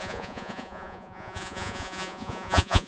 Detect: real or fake fake